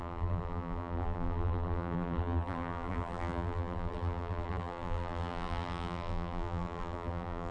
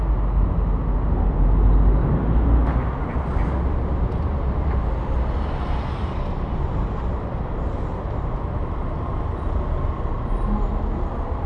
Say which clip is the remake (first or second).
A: first